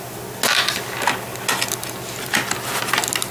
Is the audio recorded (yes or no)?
yes